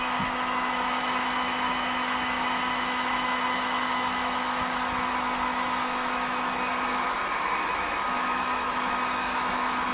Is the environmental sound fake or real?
fake